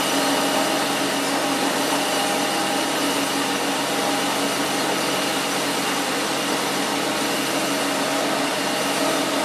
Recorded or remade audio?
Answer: recorded